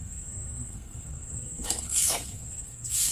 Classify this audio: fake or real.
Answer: fake